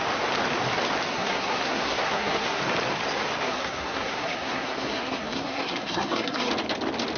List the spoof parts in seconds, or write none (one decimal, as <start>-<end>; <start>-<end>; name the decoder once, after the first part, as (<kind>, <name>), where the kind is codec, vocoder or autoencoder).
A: 1.1-2.6 (codec, SNAC); 3.4-6.5